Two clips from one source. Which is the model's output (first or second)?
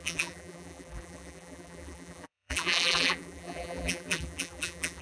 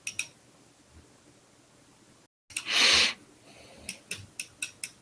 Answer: first